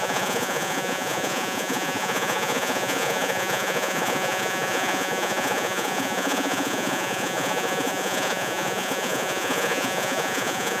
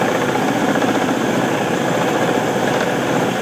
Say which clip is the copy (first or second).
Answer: first